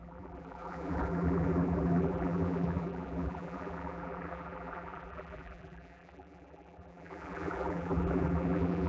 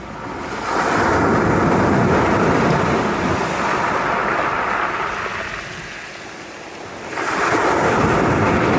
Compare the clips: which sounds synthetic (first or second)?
first